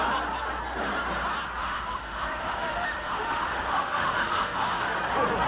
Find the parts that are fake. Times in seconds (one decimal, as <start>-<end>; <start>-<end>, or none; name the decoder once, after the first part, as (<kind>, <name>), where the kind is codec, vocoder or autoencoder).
1.6-4.9 (autoencoder, DAC-VAE)